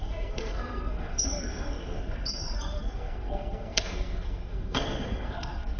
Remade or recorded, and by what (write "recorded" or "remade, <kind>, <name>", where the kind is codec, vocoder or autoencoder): remade, codec, SNAC